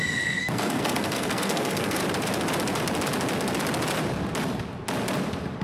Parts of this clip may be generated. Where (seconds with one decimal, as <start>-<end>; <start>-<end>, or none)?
0.0-2.0